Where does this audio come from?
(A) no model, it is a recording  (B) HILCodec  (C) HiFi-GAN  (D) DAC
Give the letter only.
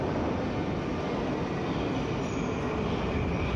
A